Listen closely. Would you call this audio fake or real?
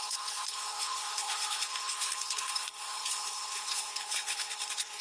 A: fake